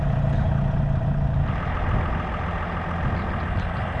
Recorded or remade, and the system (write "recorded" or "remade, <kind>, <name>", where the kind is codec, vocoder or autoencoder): recorded